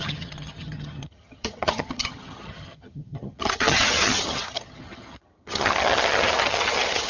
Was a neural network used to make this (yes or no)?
yes